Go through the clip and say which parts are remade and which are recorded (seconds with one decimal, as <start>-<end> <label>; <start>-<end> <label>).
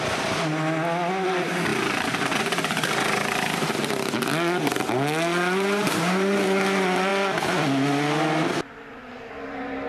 0.0-9.9 recorded